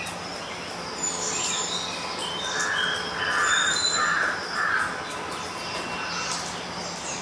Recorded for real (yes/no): yes